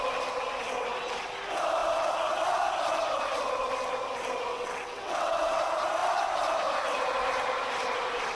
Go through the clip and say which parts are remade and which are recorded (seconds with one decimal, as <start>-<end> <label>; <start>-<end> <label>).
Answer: 0.0-4.5 recorded; 4.5-5.6 remade; 5.6-8.3 recorded